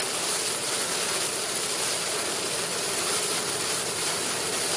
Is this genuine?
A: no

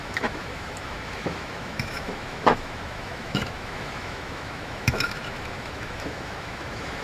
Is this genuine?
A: no